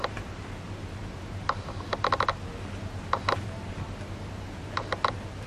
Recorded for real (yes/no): yes